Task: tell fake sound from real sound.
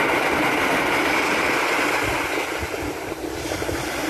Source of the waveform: real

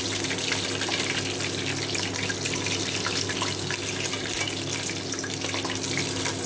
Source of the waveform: real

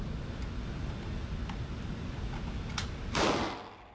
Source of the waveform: real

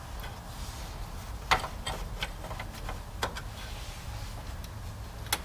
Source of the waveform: real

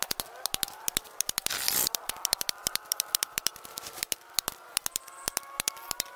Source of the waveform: fake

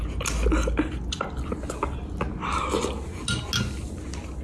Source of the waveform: real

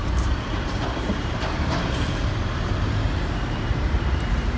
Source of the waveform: fake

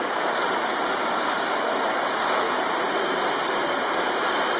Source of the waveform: fake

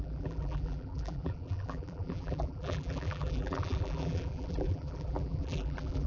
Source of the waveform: fake